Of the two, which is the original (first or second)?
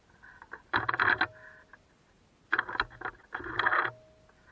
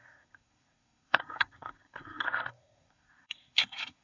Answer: first